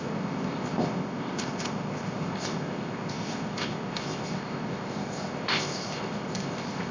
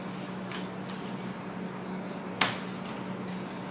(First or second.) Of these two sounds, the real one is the second